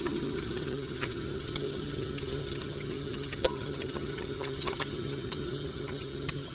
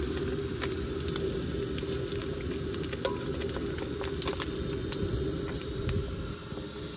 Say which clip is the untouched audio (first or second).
second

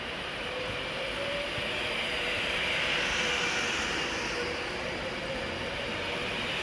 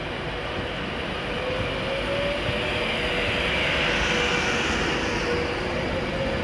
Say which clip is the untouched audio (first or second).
second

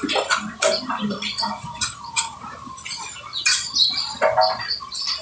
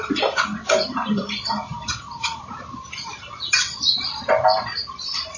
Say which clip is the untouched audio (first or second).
first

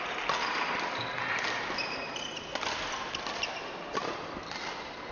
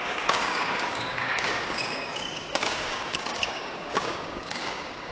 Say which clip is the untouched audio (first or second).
first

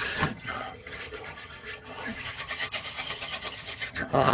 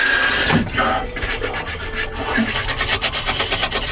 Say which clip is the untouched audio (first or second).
second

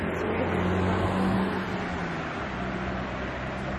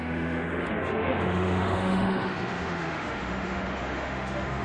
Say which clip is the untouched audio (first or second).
first